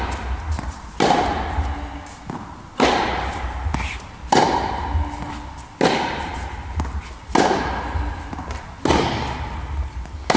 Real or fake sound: real